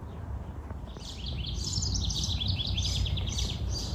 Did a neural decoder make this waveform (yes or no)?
yes